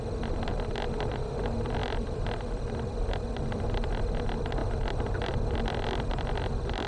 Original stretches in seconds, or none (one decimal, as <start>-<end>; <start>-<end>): 0.0-1.8; 3.9-4.6; 5.6-6.9